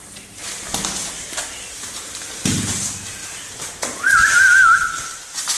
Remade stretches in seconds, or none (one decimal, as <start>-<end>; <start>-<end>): none